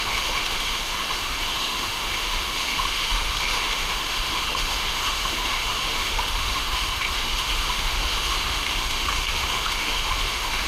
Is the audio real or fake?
fake